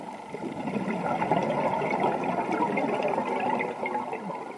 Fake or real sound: real